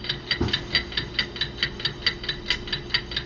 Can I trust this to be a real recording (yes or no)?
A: yes